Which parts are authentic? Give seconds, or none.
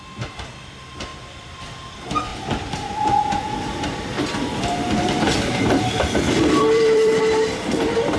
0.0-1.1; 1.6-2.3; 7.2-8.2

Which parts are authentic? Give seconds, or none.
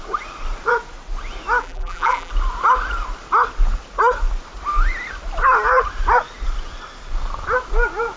0.0-1.6; 2.3-8.2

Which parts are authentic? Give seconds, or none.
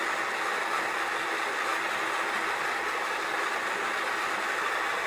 0.0-5.1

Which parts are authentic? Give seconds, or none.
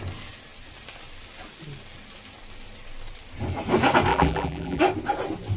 0.0-4.1; 4.8-5.6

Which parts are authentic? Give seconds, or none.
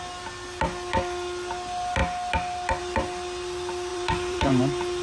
0.0-3.9; 4.6-5.0